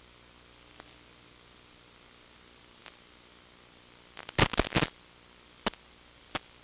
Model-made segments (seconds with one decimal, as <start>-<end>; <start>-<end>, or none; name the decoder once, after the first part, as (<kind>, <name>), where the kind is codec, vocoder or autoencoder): none